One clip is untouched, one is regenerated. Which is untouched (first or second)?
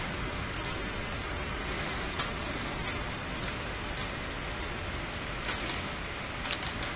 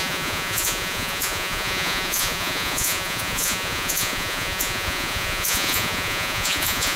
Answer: first